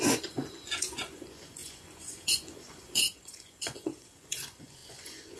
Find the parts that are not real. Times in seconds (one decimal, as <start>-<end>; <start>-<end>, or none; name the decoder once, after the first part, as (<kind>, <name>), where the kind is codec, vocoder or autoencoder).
0.0-5.4 (vocoder, Vocos)